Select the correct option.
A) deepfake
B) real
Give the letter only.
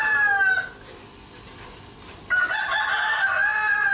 B